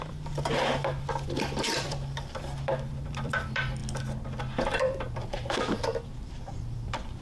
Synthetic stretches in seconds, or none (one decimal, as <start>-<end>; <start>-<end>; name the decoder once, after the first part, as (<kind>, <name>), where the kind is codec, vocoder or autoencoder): 0.0-3.8 (vocoder, BigVGAN v2); 4.4-7.2